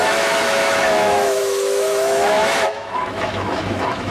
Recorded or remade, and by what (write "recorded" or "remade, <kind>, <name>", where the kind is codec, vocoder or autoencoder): remade, autoencoder, DAC-VAE